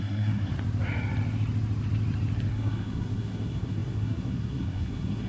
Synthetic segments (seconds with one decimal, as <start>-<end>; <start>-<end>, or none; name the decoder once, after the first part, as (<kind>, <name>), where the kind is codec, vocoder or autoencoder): 0.0-0.5 (codec, SNAC); 2.5-5.3